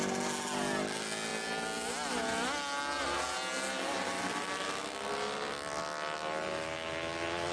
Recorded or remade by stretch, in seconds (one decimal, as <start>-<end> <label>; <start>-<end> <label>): 0.0-7.5 recorded